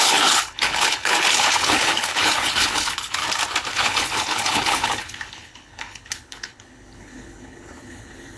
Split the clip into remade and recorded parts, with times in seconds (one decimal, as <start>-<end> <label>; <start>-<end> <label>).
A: 0.0-3.2 remade; 3.2-3.7 recorded; 3.7-8.4 remade